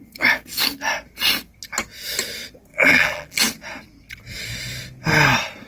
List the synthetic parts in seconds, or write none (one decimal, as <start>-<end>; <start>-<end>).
2.7-3.4